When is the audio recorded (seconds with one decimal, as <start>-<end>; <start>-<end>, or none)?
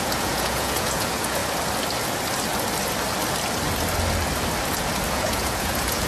1.4-5.1